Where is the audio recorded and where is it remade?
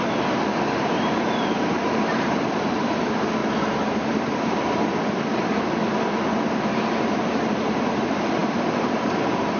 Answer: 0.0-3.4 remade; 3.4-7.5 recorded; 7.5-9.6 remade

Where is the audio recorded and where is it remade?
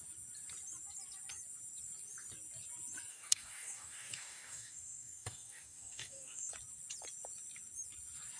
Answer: 0.0-3.1 recorded; 3.1-6.5 remade; 6.5-8.4 recorded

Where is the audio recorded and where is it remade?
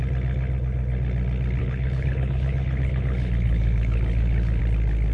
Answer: 0.0-1.6 recorded; 1.6-4.6 remade; 4.6-5.1 recorded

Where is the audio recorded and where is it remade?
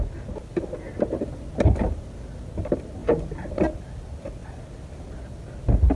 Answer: 0.0-6.0 recorded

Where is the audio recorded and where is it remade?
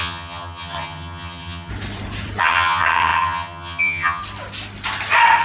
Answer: 0.0-1.7 remade; 1.7-2.4 recorded; 2.4-4.2 remade; 4.2-5.4 recorded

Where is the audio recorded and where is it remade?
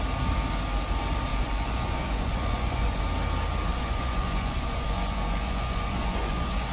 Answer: 0.0-1.3 recorded; 1.3-3.0 remade; 3.0-3.7 recorded; 3.7-6.7 remade